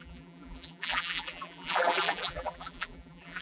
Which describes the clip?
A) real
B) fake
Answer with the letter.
B